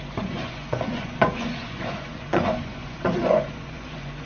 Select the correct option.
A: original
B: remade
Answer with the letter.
B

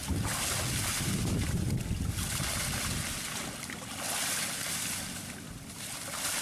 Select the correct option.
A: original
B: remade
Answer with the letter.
A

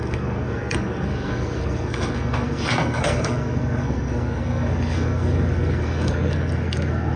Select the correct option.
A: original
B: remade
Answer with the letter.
B